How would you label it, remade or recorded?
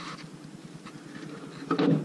recorded